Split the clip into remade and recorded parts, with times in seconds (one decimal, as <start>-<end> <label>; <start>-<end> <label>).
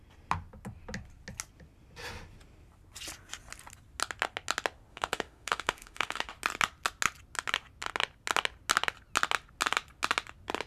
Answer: 0.0-4.9 recorded; 4.9-6.3 remade; 6.3-10.7 recorded